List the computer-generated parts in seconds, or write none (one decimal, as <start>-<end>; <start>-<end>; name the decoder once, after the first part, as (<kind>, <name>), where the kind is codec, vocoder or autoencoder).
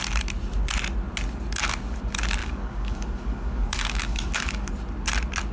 2.4-4.7 (codec, DAC)